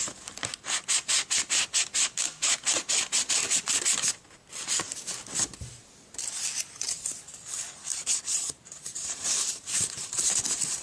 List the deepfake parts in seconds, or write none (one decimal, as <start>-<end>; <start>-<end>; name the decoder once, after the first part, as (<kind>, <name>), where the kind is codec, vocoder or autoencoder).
7.9-10.3 (vocoder, BigVGAN v2)